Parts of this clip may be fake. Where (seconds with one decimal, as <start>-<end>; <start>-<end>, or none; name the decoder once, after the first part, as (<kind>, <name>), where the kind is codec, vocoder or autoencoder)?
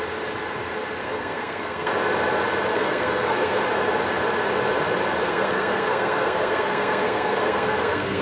1.0-1.9 (codec, SNAC); 2.7-3.6; 5.2-8.2